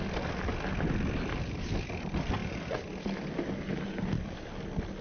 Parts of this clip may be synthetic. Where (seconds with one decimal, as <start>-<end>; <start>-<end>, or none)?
none